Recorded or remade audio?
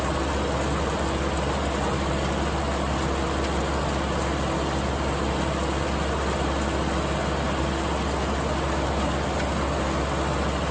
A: recorded